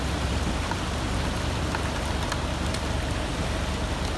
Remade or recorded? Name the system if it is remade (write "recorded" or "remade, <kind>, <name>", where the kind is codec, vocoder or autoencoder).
recorded